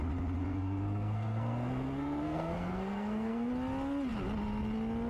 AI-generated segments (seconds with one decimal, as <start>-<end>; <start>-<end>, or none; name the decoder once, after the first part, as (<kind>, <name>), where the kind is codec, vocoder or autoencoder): 0.4-3.5 (codec, SNAC)